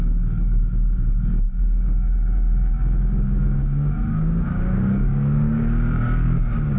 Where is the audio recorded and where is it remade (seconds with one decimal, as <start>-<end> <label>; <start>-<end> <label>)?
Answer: 0.0-6.8 remade